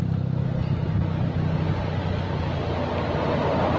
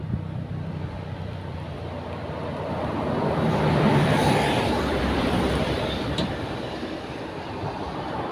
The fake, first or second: second